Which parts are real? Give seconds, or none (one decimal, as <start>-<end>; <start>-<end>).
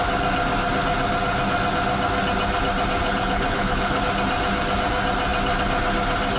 0.0-3.0; 4.0-6.4